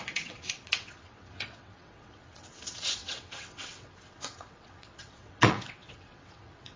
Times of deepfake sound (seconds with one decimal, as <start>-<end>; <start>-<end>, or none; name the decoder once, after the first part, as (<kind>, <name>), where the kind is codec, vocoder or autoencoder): 0.0-6.8 (vocoder, WaveNeXt)